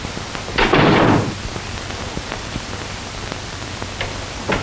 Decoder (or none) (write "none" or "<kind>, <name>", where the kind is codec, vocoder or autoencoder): none